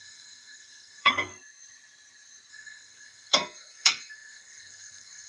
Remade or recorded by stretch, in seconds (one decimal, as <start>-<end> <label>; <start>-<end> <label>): 0.0-1.3 remade; 1.3-2.5 recorded; 2.5-5.3 remade